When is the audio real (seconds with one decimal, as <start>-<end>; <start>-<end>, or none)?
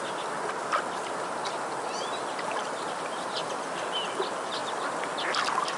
0.0-5.8